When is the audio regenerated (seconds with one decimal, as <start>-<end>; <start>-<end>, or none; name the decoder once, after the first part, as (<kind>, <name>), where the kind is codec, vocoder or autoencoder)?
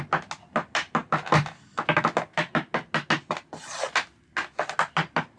none